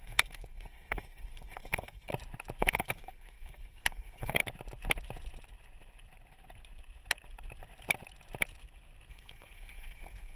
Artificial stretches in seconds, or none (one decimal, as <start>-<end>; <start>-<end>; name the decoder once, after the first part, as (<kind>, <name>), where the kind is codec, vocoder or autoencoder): 0.0-2.1 (codec, SNAC); 2.6-4.4; 9.1-10.4